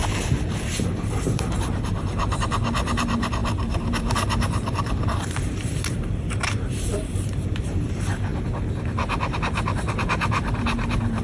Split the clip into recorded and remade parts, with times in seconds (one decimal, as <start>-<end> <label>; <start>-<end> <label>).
0.0-0.8 recorded; 0.8-8.3 remade; 8.3-9.9 recorded; 9.9-11.2 remade